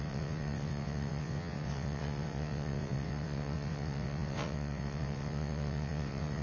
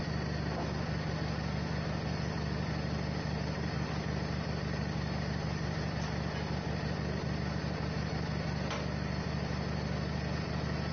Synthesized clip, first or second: first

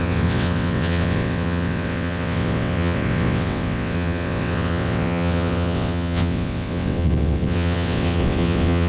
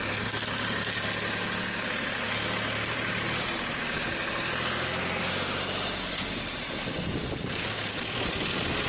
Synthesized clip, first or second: first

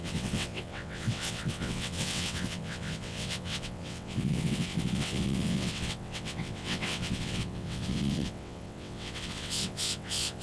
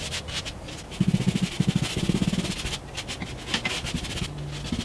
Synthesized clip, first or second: first